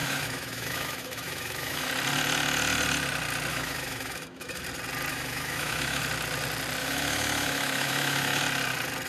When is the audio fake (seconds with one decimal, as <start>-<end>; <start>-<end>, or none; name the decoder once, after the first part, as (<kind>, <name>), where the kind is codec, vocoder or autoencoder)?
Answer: 0.0-1.9 (autoencoder, DAC-VAE); 3.5-4.6; 5.1-6.0; 6.8-8.4